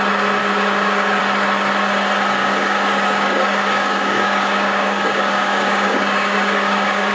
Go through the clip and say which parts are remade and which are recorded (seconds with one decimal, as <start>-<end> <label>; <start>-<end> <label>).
0.0-0.4 recorded; 0.4-1.2 remade; 1.2-2.4 recorded; 2.4-7.1 remade